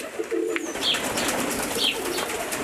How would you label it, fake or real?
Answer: real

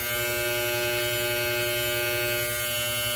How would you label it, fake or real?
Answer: real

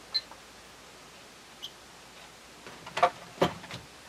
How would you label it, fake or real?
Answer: real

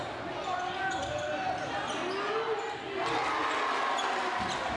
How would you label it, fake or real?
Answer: real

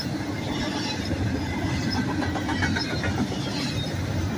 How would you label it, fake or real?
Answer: real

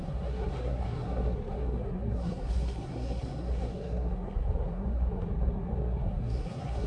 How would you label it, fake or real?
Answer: fake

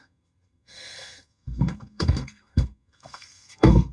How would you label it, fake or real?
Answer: fake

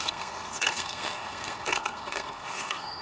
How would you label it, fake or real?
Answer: fake